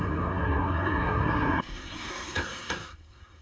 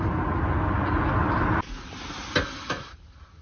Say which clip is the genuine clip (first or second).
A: second